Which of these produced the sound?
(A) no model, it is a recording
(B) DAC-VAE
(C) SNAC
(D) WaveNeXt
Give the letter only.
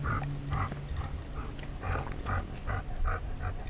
A